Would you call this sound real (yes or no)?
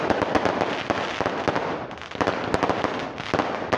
yes